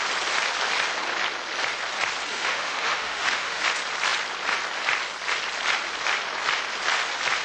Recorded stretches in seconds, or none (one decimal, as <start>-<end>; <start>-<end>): 0.0-2.3; 3.6-7.4